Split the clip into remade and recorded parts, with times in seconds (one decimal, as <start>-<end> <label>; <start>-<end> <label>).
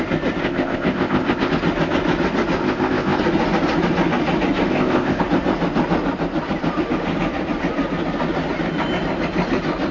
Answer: 0.0-0.4 recorded; 0.4-1.5 remade; 1.5-2.6 recorded; 2.6-3.2 remade; 3.2-4.7 recorded; 4.7-5.2 remade; 5.2-9.9 recorded